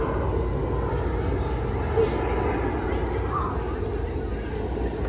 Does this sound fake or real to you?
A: real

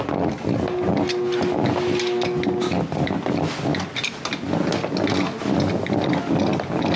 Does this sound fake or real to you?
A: real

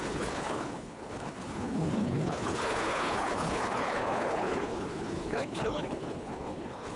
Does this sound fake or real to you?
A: fake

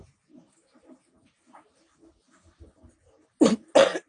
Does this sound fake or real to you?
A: real